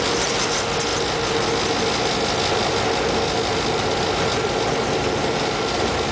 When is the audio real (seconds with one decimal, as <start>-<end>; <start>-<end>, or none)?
0.0-6.1